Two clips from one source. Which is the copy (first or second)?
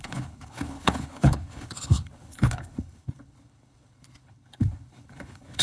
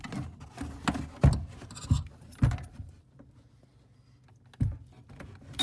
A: first